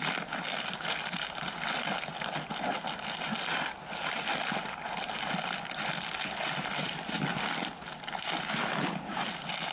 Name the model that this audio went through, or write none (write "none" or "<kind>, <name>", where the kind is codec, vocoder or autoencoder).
none